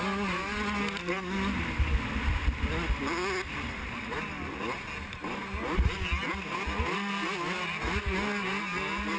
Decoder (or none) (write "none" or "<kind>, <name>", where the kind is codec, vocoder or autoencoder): none